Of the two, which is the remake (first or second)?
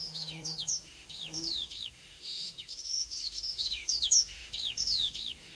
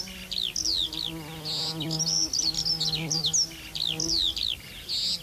first